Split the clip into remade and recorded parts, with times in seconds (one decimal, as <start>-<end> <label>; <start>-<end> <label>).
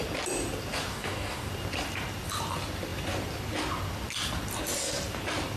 0.0-0.9 recorded; 0.9-1.5 remade; 1.5-5.6 recorded